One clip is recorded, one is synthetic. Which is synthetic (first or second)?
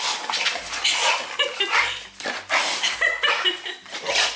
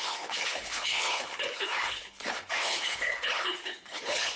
second